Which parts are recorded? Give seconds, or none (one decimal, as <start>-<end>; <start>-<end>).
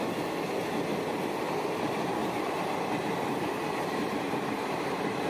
0.0-2.2